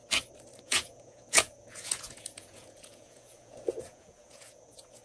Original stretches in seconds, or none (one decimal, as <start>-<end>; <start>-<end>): 0.0-0.6